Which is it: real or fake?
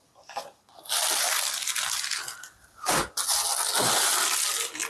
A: real